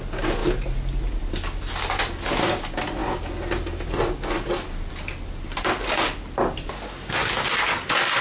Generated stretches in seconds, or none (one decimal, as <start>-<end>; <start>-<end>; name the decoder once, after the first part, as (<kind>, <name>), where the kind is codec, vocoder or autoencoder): none